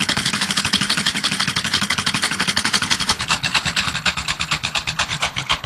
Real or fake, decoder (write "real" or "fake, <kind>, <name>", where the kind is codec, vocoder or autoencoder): fake, codec, HILCodec